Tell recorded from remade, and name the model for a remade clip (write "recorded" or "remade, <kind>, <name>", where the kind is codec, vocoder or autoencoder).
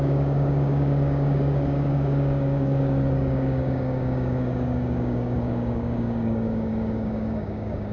remade, codec, DAC